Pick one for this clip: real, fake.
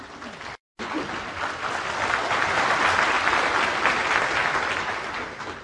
real